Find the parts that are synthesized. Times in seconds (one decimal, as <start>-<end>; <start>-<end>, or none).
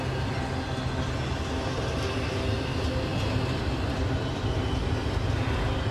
3.1-4.5